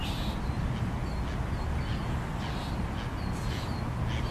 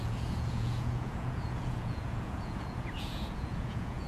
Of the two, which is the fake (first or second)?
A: second